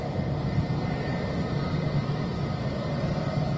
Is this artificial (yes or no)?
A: yes